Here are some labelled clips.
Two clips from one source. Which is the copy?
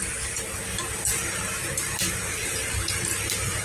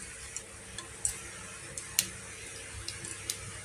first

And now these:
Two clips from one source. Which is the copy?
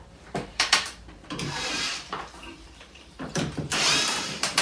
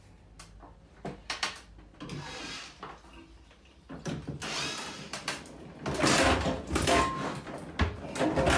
first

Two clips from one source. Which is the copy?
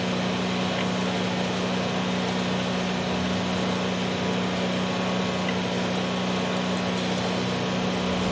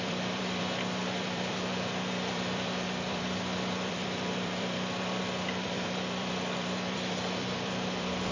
second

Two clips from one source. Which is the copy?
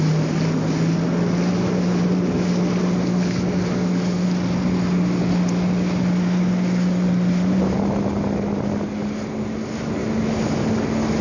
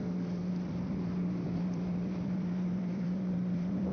second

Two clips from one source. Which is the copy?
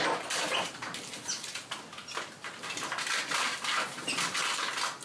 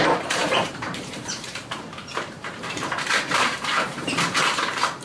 second